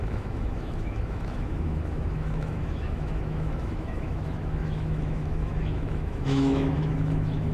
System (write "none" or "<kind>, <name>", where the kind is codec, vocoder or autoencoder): autoencoder, DAC-VAE